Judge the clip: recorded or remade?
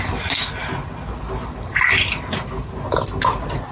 recorded